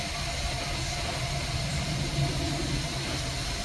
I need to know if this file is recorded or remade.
recorded